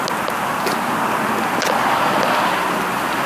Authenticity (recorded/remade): recorded